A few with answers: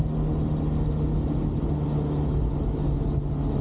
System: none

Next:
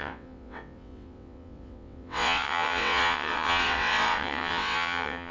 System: vocoder, WaveNeXt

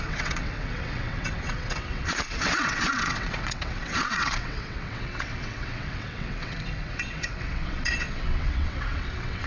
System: vocoder, WaveNeXt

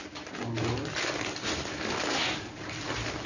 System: none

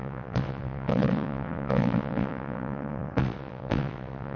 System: vocoder, WaveNeXt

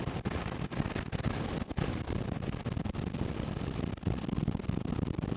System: none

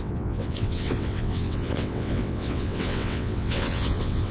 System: vocoder, WaveNeXt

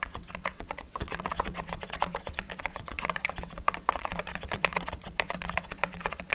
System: vocoder, WaveNeXt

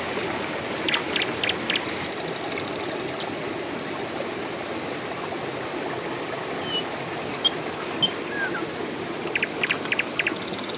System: none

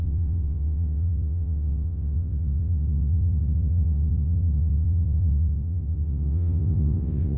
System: vocoder, WaveNeXt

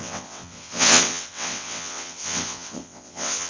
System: vocoder, WaveNeXt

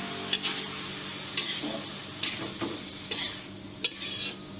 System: none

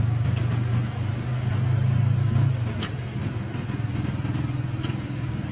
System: none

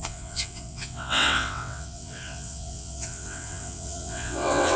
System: vocoder, WaveNeXt